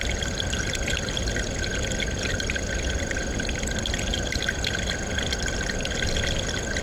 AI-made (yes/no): no